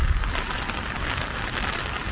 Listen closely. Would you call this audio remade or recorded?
recorded